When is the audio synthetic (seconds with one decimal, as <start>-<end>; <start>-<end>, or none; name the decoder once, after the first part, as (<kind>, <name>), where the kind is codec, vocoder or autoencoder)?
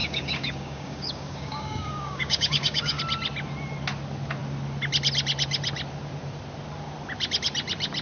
0.0-3.0 (codec, DAC)